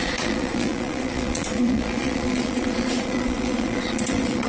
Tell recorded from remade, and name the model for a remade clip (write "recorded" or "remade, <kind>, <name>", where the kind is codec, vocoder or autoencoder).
remade, vocoder, Vocos